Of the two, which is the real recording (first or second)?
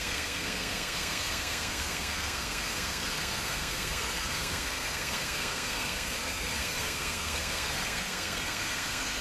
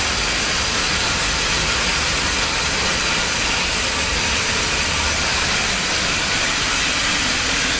second